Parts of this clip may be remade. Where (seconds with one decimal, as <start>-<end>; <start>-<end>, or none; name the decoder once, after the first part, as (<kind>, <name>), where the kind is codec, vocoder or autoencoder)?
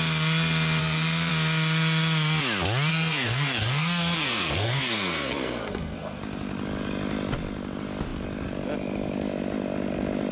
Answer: 0.8-1.3 (codec, SNAC); 2.9-6.2